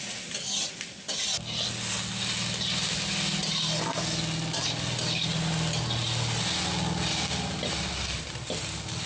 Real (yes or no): yes